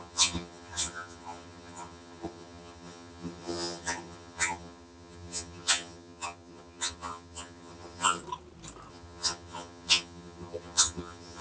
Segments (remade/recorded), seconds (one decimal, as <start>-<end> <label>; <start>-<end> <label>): 0.0-8.2 remade; 8.2-8.9 recorded; 8.9-11.4 remade

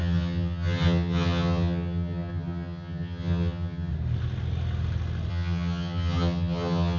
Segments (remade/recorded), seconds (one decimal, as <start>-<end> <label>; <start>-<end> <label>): 0.0-3.9 remade; 3.9-5.3 recorded; 5.3-7.0 remade

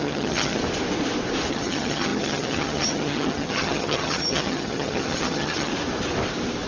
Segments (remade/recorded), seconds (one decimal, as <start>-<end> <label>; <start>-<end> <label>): 0.0-0.6 remade; 0.6-1.5 recorded; 1.5-5.7 remade; 5.7-6.7 recorded

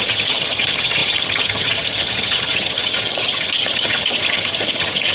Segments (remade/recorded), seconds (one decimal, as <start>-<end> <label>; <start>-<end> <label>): 0.0-5.1 remade